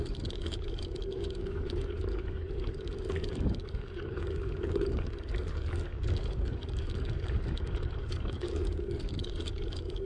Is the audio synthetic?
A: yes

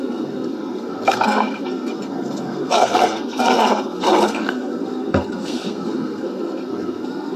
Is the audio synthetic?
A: yes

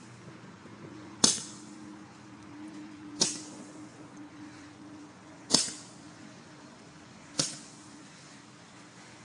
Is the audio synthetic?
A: yes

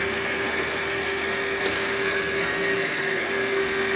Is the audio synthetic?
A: yes